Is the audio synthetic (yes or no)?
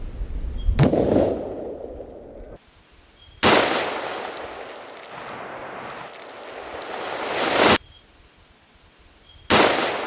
no